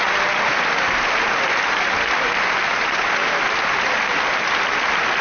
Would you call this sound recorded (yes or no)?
yes